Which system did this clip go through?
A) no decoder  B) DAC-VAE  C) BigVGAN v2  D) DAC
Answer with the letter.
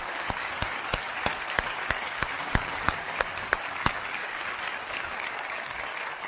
D